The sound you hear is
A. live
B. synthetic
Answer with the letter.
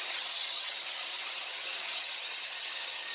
B